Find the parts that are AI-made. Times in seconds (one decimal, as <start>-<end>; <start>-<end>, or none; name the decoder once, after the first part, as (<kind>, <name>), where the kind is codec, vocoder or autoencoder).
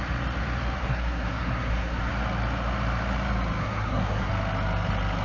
0.8-2.1 (codec, SNAC); 3.6-4.3